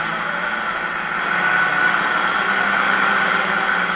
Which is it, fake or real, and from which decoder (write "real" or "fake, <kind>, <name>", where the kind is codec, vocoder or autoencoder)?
real